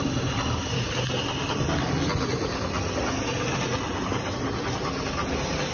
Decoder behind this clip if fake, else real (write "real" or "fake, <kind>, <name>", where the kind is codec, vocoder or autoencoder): real